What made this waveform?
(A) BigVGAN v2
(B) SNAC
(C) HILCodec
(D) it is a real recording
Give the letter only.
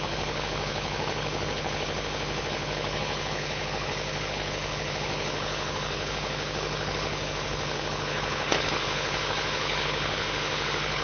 C